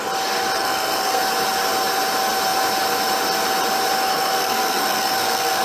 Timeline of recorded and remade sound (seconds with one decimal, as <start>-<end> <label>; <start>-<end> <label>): 0.0-0.6 recorded; 0.6-1.2 remade; 1.2-4.1 recorded; 4.1-5.6 remade

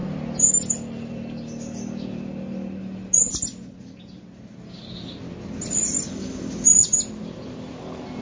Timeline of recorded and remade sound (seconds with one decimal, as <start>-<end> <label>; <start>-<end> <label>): 0.0-8.2 recorded

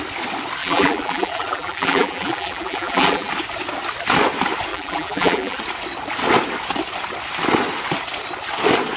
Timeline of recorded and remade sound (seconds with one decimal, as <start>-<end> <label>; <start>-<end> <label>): 0.0-0.6 recorded; 0.6-3.3 remade; 3.3-4.7 recorded; 4.7-5.6 remade; 5.6-9.0 recorded

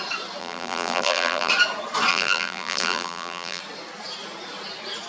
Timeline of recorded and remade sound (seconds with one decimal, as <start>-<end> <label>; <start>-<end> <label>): 0.0-0.4 recorded; 0.4-1.5 remade; 1.5-2.1 recorded; 2.1-3.6 remade; 3.6-5.1 recorded

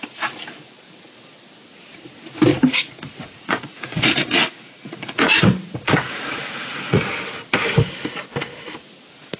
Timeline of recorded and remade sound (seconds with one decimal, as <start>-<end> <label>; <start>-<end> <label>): 0.0-2.5 recorded; 2.5-7.0 remade; 7.0-9.4 recorded

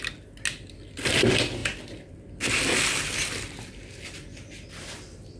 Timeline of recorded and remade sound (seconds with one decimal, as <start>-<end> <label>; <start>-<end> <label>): 0.0-5.4 recorded

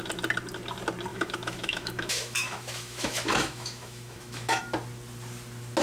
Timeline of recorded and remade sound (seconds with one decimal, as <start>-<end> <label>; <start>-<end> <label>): 0.0-1.1 recorded; 1.1-4.6 remade; 4.6-5.8 recorded

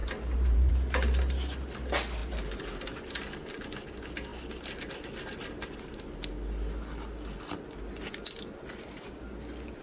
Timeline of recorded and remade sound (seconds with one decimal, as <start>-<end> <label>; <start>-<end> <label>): 0.0-0.7 remade; 0.7-9.8 recorded